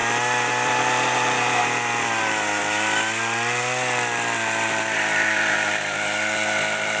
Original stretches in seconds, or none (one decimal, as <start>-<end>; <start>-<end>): 2.2-2.6